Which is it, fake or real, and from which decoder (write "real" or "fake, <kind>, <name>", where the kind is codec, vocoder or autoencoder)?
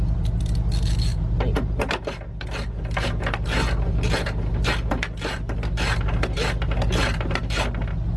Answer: real